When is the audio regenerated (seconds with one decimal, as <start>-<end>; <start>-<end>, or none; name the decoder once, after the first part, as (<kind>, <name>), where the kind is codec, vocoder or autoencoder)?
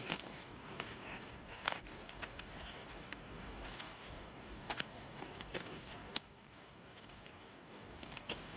0.0-8.6 (codec, DAC)